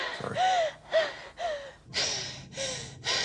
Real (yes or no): yes